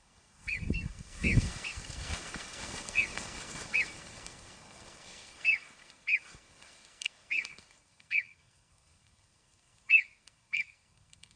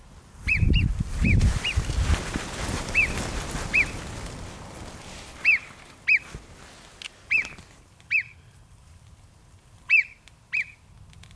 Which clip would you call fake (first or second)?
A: first